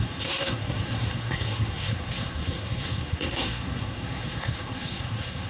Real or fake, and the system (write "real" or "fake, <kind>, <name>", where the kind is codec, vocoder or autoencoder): fake, codec, SNAC